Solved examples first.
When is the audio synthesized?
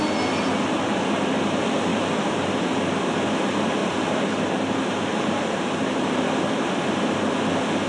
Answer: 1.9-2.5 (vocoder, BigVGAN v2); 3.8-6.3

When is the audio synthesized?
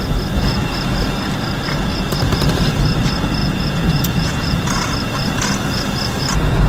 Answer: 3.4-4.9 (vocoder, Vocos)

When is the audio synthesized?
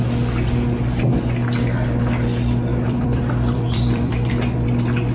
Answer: 2.7-4.1 (vocoder, BigVGAN v2)